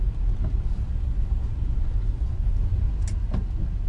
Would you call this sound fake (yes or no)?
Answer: no